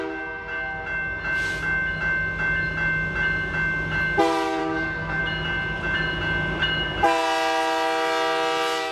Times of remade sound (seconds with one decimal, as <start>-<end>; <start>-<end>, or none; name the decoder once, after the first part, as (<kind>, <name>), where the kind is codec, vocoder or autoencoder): 4.6-5.2 (codec, DAC)